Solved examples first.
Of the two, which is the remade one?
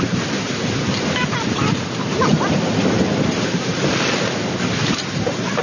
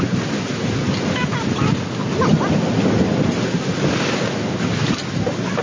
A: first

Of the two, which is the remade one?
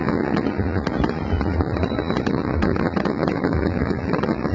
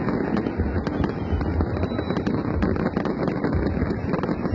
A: first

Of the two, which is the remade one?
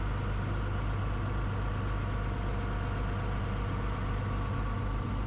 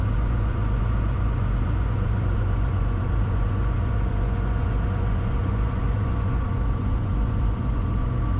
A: second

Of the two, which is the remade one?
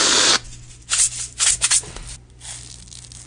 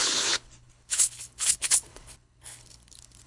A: second